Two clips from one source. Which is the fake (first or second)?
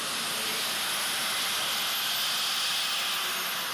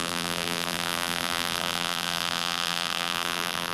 second